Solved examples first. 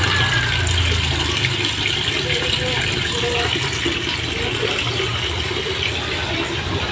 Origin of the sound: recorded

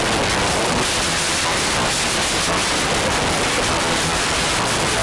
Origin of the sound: recorded